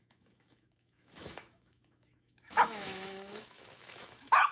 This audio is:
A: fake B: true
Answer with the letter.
A